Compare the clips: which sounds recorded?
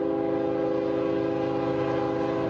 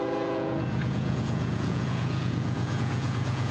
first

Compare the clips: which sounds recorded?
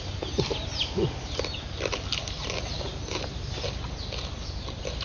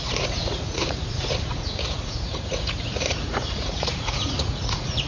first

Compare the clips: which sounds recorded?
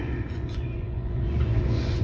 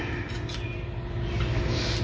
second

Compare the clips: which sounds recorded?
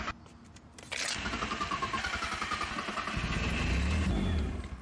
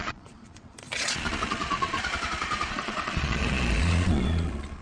first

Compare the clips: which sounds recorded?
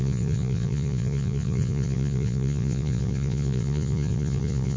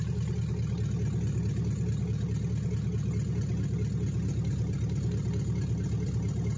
second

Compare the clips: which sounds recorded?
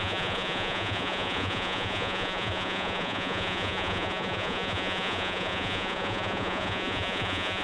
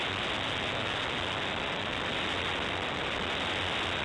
second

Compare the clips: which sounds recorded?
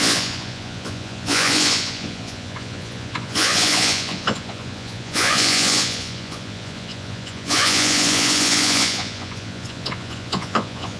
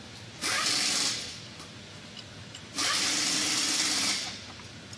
second